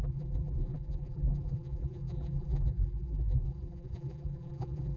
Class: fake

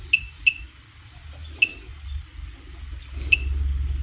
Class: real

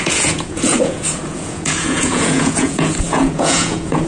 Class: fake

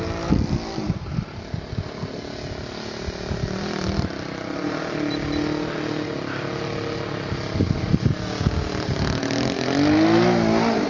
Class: real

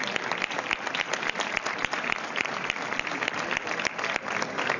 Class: real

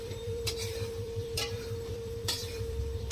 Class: fake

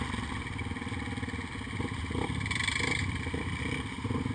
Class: real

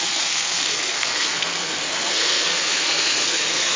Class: fake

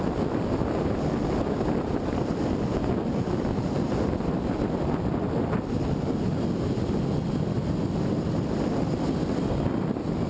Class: real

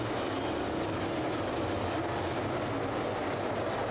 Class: real